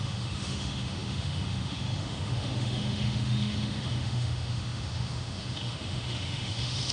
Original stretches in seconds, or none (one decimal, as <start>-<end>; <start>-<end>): none